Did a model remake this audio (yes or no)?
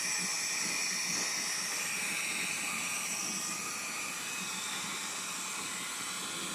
no